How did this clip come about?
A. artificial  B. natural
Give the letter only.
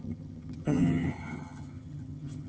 A